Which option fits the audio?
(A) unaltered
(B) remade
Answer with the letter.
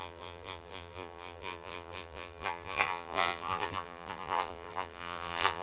B